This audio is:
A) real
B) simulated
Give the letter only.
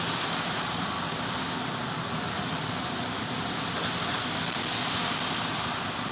A